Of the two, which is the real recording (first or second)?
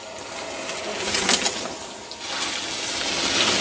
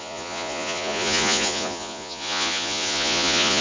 first